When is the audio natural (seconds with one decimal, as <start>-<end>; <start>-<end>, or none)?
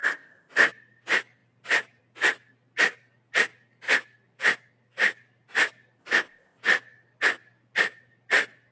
0.7-6.0; 6.6-8.7